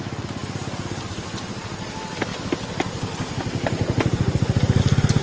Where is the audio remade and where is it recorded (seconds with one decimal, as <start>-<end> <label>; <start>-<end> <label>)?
0.0-5.2 recorded